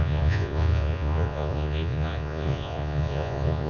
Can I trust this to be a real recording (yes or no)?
no